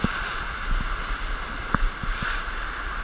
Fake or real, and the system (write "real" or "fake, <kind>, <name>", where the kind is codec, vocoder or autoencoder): real